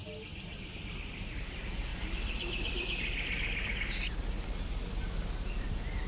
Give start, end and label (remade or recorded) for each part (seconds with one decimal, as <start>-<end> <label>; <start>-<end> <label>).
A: 0.0-6.1 recorded